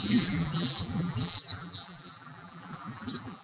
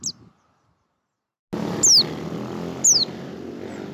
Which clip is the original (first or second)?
second